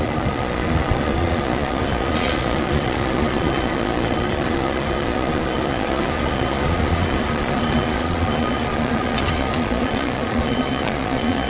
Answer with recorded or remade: remade